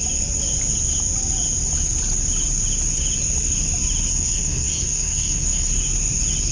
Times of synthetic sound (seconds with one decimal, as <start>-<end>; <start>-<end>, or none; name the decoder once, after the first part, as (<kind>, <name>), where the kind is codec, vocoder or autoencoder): 4.1-5.7 (codec, SNAC)